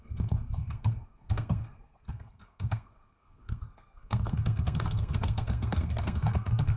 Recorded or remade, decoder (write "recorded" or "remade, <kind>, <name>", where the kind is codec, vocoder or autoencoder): remade, codec, SNAC